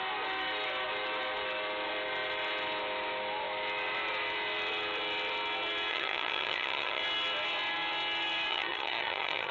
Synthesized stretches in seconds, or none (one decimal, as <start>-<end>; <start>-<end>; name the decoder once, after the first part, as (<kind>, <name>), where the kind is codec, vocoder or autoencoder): 5.9-7.0 (vocoder, HiFi-GAN); 8.5-9.5